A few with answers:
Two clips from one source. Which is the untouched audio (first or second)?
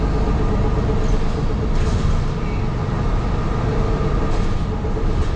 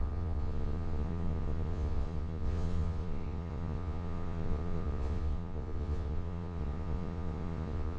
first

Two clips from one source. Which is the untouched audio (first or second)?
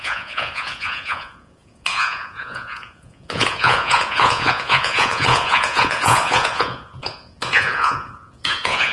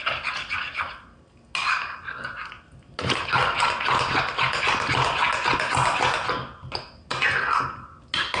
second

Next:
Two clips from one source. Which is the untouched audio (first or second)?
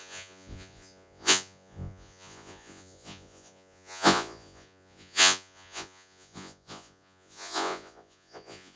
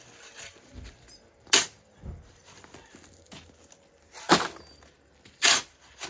second